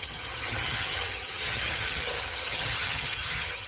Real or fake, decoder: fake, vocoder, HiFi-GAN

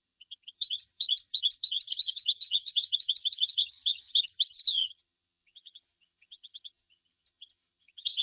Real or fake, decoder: fake, vocoder, HiFi-GAN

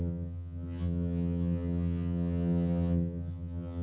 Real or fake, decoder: fake, vocoder, HiFi-GAN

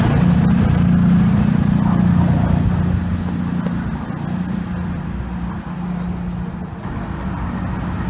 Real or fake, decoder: real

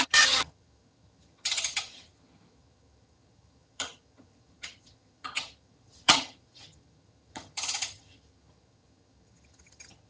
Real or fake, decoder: fake, vocoder, HiFi-GAN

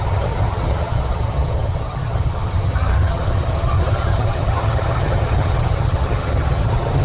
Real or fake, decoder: fake, vocoder, HiFi-GAN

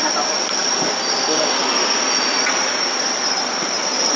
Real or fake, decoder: real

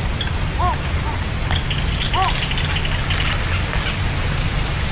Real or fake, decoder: real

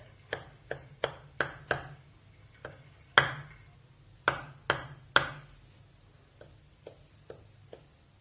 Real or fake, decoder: real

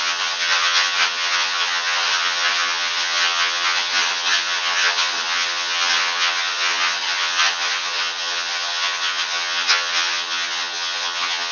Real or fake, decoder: fake, vocoder, HiFi-GAN